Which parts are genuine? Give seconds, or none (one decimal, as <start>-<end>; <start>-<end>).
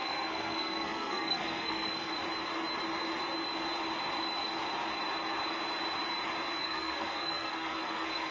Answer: 2.1-6.6